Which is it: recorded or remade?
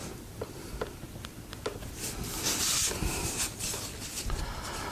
remade